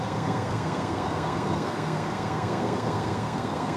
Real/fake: fake